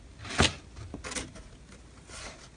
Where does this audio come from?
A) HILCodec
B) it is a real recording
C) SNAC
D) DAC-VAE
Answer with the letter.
B